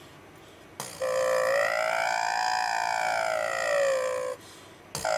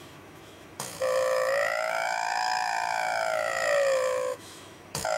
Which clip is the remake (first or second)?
second